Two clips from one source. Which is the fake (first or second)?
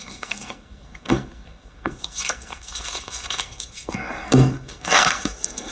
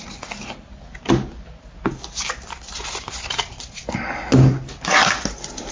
first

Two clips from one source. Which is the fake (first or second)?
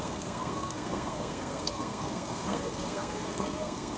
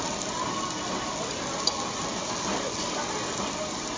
first